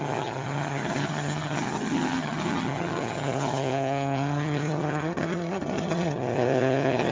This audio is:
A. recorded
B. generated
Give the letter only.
B